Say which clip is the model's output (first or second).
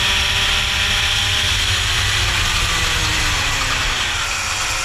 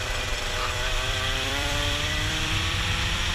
second